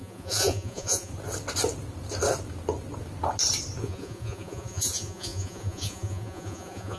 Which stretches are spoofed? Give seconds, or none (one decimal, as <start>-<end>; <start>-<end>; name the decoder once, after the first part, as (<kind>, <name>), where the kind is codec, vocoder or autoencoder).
0.0-1.1 (vocoder, Vocos); 3.8-7.0